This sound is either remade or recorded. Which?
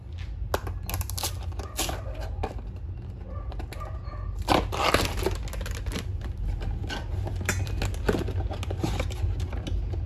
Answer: recorded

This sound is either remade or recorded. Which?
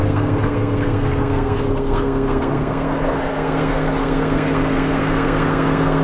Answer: remade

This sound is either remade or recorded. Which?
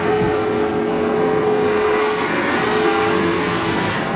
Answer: remade